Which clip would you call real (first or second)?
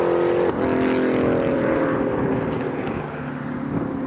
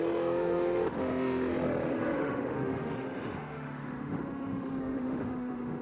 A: first